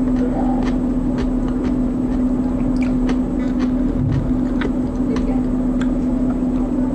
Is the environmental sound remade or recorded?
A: recorded